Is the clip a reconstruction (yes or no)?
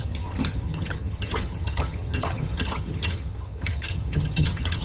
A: yes